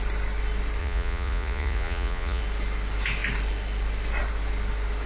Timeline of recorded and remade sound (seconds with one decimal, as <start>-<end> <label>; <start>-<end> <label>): 0.0-0.8 recorded; 0.8-2.4 remade; 2.4-5.1 recorded